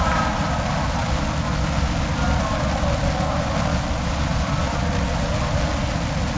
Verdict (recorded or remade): recorded